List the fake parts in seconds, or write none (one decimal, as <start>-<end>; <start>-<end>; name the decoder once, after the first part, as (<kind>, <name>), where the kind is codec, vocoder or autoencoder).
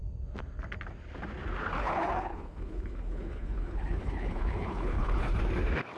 1.8-5.4 (codec, HILCodec)